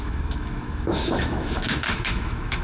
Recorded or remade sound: remade